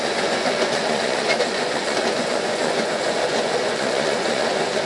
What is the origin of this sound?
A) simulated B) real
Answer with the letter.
A